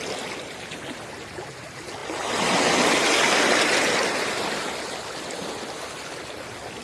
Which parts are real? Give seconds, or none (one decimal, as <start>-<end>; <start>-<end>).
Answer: 0.0-6.8